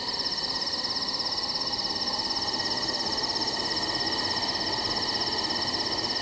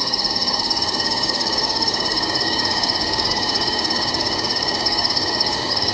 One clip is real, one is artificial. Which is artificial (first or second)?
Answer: second